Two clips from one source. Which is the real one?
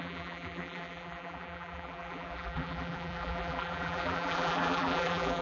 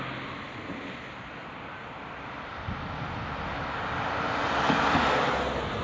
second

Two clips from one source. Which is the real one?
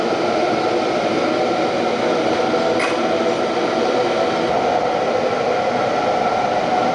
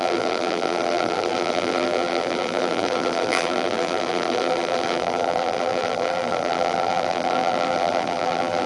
first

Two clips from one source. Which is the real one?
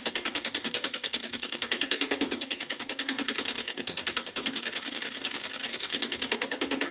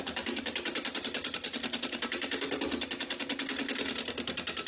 second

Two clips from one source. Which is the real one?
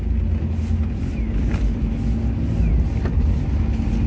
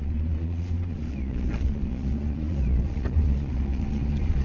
first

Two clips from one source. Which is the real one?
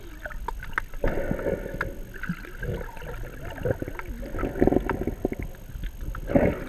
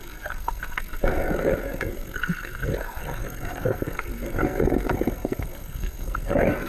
first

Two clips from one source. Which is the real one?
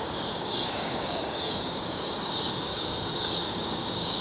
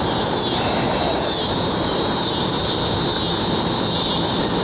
second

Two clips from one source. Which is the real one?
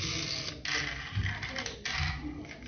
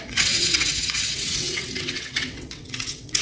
first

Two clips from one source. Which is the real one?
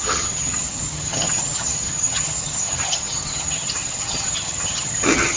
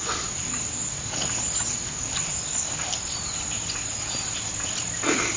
second